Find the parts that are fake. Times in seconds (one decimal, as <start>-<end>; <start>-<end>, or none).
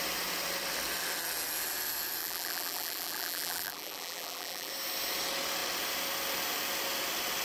2.2-4.7